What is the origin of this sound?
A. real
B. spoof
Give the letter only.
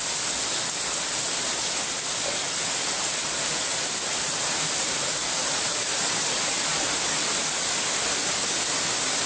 A